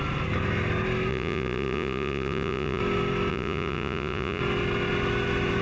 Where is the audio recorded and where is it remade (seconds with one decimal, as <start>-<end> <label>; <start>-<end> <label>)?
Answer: 0.0-1.1 recorded; 1.1-2.8 remade; 2.8-3.3 recorded; 3.3-4.4 remade; 4.4-5.6 recorded